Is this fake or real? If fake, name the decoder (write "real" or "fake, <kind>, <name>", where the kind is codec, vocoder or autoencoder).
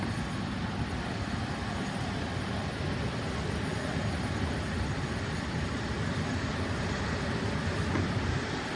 real